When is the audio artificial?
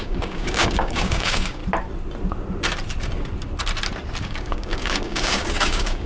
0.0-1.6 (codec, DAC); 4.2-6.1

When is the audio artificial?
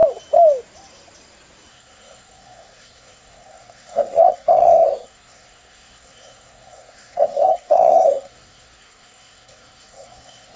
1.7-10.6 (codec, SNAC)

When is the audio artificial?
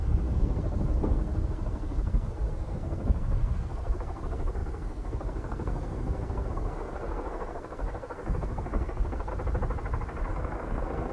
0.0-9.3 (codec, SNAC); 10.3-11.1